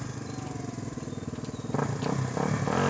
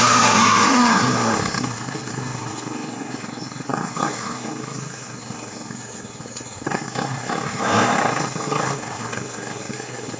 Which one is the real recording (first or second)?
first